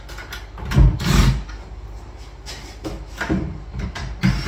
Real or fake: real